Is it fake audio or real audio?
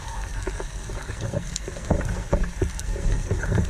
fake